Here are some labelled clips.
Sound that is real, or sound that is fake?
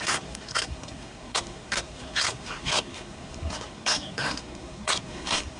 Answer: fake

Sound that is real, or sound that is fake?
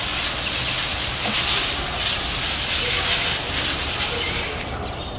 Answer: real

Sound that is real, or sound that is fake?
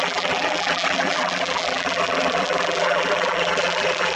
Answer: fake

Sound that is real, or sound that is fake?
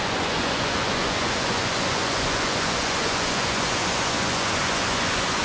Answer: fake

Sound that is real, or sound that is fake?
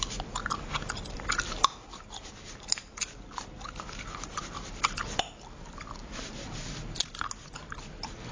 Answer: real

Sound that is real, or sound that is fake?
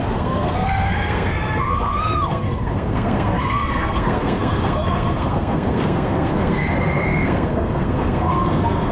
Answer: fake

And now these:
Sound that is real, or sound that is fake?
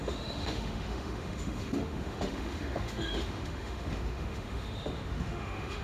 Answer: fake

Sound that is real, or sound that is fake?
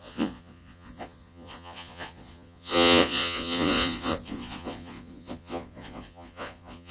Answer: fake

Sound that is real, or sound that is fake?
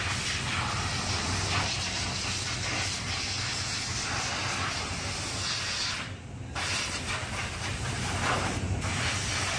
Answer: real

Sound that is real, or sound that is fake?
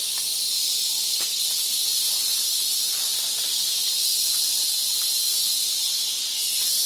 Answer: real